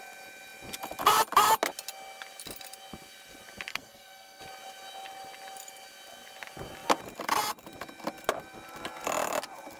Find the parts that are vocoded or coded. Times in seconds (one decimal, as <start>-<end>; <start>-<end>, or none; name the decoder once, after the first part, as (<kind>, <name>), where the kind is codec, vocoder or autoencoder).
3.7-4.4 (codec, SNAC)